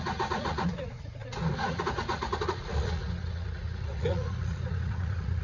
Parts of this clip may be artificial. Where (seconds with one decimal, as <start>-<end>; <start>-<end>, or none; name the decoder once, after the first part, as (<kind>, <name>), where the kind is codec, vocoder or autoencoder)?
0.0-5.4 (vocoder, Vocos)